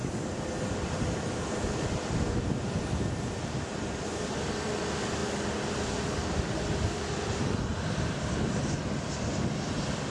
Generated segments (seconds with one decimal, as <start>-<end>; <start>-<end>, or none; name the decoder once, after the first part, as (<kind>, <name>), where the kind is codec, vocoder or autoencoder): 0.0-4.2 (vocoder, BigVGAN v2); 7.7-8.4